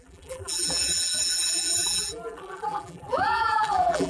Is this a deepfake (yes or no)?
yes